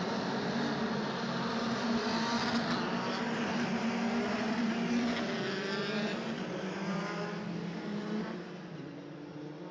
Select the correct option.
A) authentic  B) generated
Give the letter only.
A